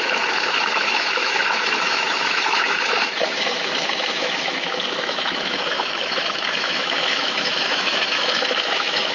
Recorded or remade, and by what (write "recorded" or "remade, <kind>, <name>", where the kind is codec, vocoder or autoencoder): remade, autoencoder, DAC-VAE